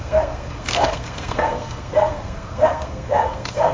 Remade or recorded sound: remade